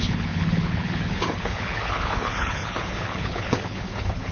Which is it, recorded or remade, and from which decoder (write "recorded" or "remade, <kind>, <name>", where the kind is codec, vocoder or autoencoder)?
remade, codec, HILCodec